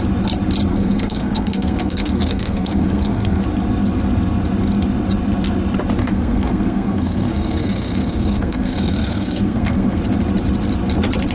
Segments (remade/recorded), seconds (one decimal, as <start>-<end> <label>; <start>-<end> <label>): 0.0-0.7 recorded; 0.7-3.4 remade; 3.4-6.0 recorded; 6.0-10.0 remade; 10.0-11.3 recorded